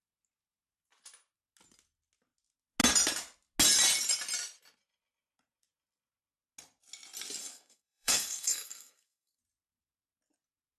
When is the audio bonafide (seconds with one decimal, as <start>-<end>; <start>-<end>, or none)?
0.0-7.4; 9.4-10.8